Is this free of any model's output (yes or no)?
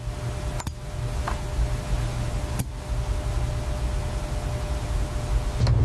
yes